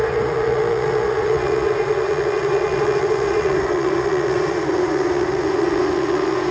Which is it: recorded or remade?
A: remade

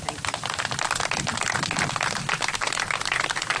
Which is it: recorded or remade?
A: recorded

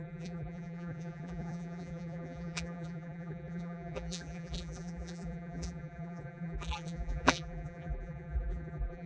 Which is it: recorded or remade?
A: remade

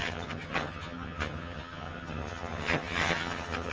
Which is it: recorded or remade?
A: remade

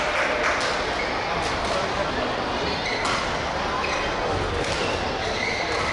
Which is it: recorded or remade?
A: recorded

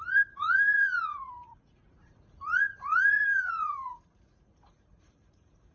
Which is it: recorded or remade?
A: remade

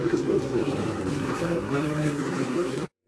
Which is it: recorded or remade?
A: remade